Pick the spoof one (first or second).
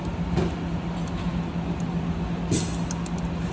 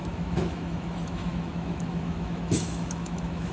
second